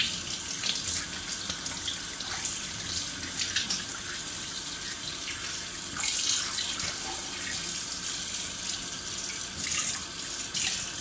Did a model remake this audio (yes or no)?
no